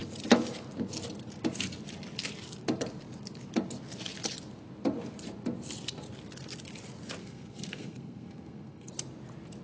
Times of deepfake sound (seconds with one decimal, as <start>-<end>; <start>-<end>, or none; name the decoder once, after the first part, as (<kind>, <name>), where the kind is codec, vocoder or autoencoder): 7.2-8.9 (codec, SNAC)